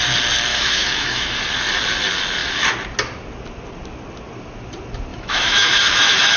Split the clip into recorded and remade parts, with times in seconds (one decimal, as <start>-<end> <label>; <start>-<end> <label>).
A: 0.0-0.5 recorded; 0.5-1.4 remade; 1.4-5.1 recorded; 5.1-6.4 remade